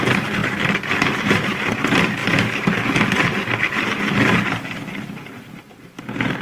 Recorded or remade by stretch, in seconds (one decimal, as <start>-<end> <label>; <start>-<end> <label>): 0.0-0.4 remade; 0.4-1.2 recorded; 1.2-2.2 remade; 2.2-6.0 recorded; 6.0-6.4 remade